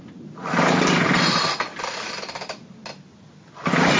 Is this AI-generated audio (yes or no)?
no